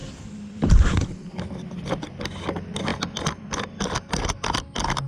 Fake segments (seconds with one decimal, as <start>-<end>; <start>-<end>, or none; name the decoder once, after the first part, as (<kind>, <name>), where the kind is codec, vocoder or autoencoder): 0.0-2.2 (vocoder, BigVGAN v2)